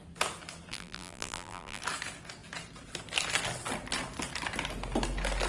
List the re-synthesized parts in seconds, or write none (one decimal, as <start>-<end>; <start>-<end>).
0.7-1.8